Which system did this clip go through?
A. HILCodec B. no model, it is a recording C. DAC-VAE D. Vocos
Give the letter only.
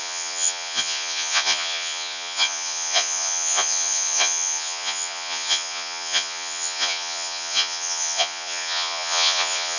D